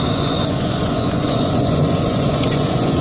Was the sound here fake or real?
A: fake